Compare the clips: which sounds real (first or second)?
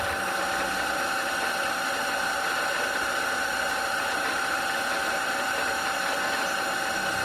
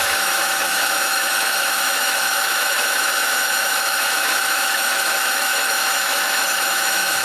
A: first